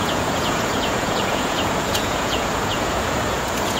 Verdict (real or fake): fake